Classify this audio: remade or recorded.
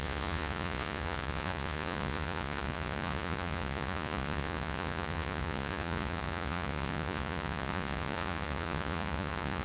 remade